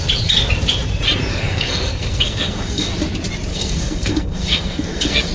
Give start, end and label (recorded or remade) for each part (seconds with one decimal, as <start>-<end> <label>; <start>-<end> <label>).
0.0-1.3 recorded; 1.3-2.9 remade; 2.9-3.5 recorded; 3.5-5.3 remade

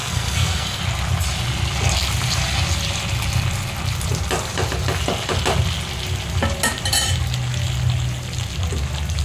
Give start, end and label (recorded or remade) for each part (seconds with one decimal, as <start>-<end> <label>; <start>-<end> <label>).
0.0-0.8 remade; 0.8-9.2 recorded

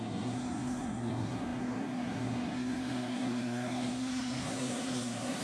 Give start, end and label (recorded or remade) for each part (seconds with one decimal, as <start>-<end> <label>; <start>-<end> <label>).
0.0-5.4 remade

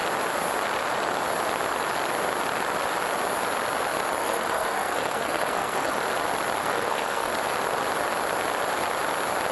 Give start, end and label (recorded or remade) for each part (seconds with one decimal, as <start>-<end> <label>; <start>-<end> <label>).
0.0-4.2 recorded; 4.2-6.0 remade; 6.0-6.6 recorded; 6.6-7.3 remade; 7.3-9.5 recorded

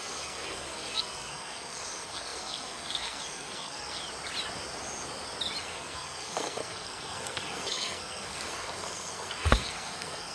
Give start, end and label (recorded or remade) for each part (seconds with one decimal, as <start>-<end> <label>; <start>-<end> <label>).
0.0-4.0 remade; 4.0-5.6 recorded; 5.6-10.3 remade

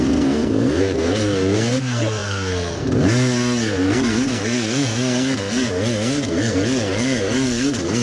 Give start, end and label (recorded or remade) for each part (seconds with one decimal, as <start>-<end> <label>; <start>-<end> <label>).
0.0-8.0 remade